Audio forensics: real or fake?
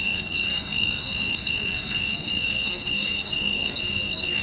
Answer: fake